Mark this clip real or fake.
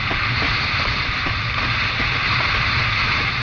real